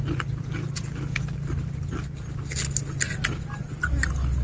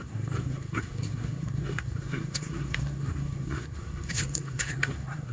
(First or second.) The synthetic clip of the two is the second